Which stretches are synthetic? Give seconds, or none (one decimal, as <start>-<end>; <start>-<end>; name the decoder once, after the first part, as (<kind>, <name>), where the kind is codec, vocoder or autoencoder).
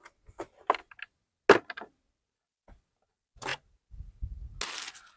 none